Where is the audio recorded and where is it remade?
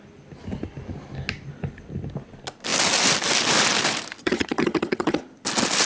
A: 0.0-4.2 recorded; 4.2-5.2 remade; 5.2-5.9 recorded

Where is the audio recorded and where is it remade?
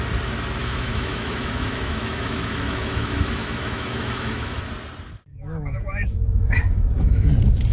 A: 0.0-0.6 recorded; 0.6-4.6 remade; 4.6-5.3 recorded; 5.3-7.3 remade; 7.3-7.7 recorded